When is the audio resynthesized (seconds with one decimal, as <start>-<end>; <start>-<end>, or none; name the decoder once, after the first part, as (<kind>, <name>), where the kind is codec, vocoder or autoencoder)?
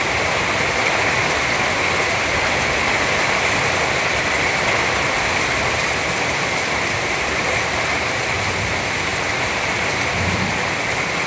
0.0-11.3 (vocoder, BigVGAN v2)